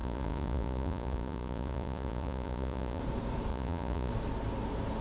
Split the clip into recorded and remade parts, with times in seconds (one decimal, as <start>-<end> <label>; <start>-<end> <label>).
0.0-3.0 remade; 3.0-3.5 recorded; 3.5-4.1 remade; 4.1-5.0 recorded